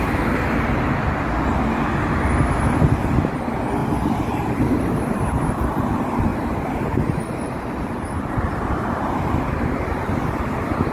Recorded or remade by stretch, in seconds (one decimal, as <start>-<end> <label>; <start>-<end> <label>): 0.0-3.8 recorded; 3.8-5.5 remade; 5.5-6.3 recorded; 6.3-9.1 remade; 9.1-10.9 recorded